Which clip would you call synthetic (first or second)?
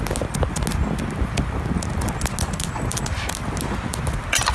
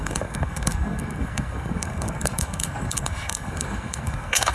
second